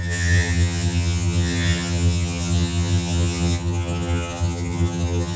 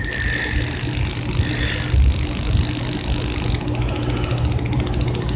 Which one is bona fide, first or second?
second